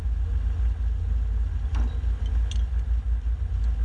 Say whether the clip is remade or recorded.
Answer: recorded